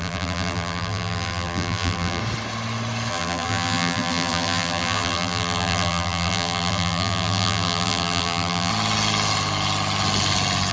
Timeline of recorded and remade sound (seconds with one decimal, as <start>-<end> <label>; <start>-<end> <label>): 0.0-2.2 remade; 2.2-3.1 recorded; 3.1-8.7 remade; 8.7-10.7 recorded